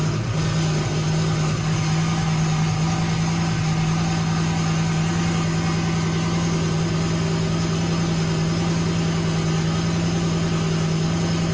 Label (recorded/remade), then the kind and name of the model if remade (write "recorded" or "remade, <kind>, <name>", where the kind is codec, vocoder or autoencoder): recorded